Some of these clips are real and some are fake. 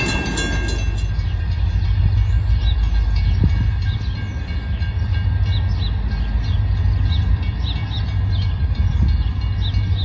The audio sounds real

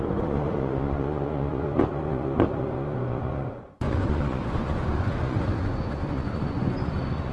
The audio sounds fake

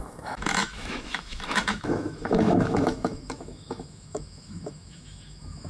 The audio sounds fake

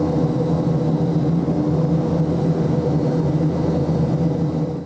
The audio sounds real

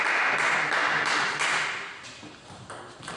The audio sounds real